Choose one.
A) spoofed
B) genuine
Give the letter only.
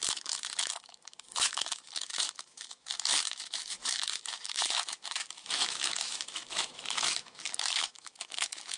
A